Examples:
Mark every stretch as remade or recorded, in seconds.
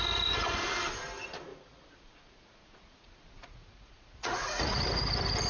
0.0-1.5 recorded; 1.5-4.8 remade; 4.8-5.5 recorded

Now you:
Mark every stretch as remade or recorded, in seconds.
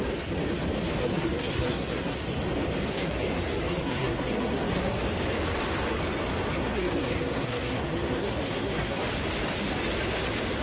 0.0-1.0 recorded; 1.0-2.2 remade; 2.2-2.9 recorded; 2.9-5.0 remade; 5.0-6.6 recorded; 6.6-9.0 remade; 9.0-10.6 recorded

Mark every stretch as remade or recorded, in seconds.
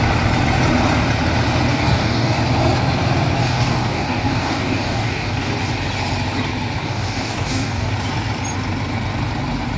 0.0-1.7 recorded; 1.7-2.4 remade; 2.4-3.4 recorded; 3.4-5.5 remade; 5.5-6.8 recorded; 6.8-7.9 remade; 7.9-9.8 recorded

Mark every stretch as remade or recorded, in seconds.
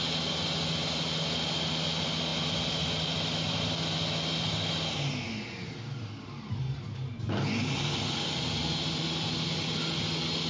0.0-10.5 recorded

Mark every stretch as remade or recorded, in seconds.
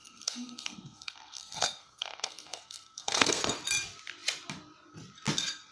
0.0-3.4 remade; 3.4-5.7 recorded